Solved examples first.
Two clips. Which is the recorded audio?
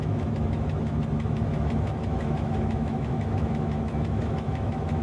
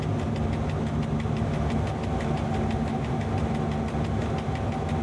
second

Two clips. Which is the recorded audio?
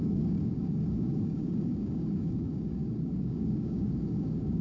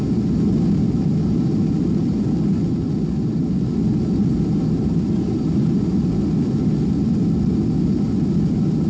second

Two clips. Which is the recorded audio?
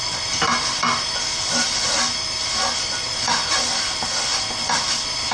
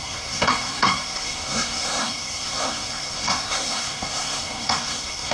first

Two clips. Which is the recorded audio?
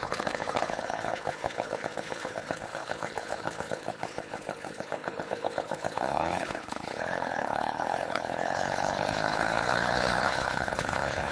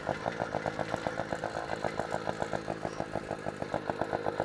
second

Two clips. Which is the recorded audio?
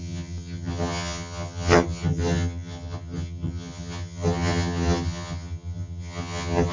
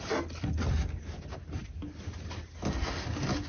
second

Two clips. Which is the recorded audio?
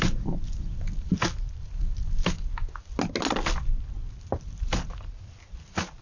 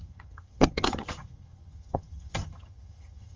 first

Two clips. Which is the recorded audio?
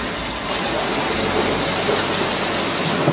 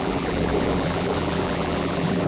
first